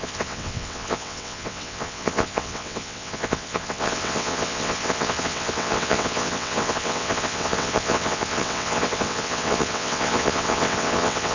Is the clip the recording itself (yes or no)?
no